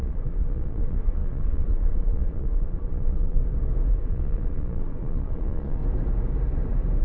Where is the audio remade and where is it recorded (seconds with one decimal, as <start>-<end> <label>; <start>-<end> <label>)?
0.0-3.4 remade; 3.4-3.9 recorded; 3.9-5.8 remade; 5.8-7.0 recorded